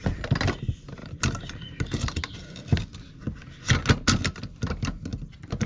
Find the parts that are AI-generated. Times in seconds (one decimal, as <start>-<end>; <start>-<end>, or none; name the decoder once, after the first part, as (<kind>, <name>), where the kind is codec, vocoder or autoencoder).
none

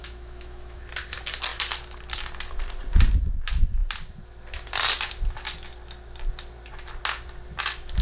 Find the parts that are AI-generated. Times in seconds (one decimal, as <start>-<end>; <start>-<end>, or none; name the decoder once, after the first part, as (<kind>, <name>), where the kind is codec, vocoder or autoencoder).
0.0-0.8 (autoencoder, DAC-VAE)

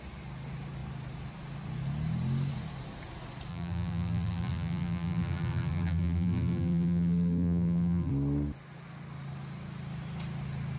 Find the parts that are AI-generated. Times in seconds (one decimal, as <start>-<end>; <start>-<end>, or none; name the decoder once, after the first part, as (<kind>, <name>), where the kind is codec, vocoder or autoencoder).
3.5-8.1 (vocoder, BigVGAN v2)

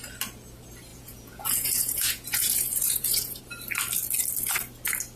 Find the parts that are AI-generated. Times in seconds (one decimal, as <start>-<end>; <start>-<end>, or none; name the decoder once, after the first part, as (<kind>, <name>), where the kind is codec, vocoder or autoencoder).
0.9-3.4 (vocoder, Vocos)